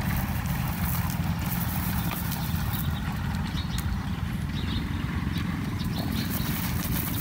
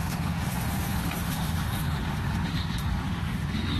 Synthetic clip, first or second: second